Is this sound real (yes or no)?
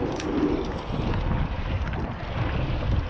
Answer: yes